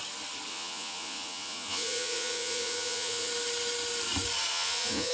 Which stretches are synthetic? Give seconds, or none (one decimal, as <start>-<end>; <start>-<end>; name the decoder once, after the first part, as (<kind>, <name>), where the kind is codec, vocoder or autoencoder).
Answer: 0.5-3.3 (vocoder, Vocos); 4.5-5.1